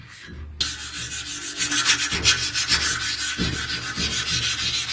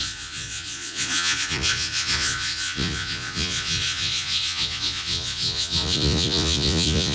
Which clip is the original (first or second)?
first